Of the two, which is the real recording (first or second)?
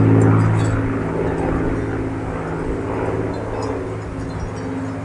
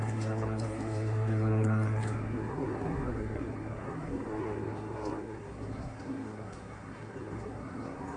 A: first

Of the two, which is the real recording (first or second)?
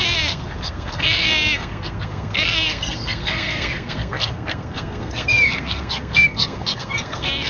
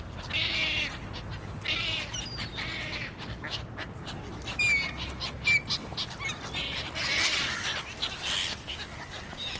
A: second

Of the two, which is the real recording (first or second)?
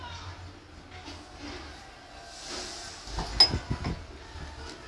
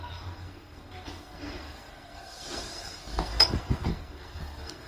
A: first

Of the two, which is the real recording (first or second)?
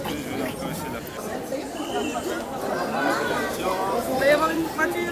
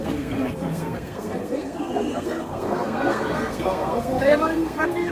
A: first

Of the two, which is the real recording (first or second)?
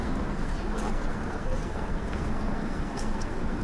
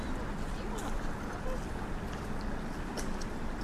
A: second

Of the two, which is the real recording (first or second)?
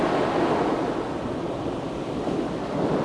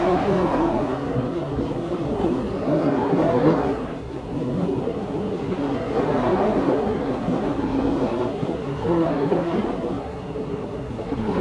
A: first